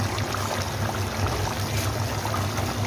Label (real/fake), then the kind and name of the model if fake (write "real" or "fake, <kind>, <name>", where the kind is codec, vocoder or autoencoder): real